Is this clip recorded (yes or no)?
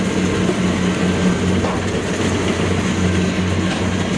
yes